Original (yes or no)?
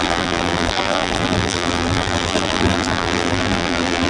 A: no